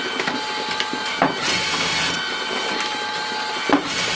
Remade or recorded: recorded